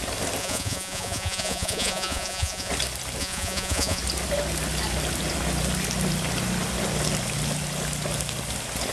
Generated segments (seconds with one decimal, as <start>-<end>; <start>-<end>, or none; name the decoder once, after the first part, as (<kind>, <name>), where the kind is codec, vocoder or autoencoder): 0.4-2.7 (vocoder, Vocos); 3.2-4.0